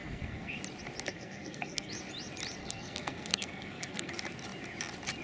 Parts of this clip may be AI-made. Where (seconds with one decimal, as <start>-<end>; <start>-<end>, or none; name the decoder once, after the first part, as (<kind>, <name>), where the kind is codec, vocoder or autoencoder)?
0.0-0.6 (codec, SNAC); 1.1-1.9; 2.6-4.1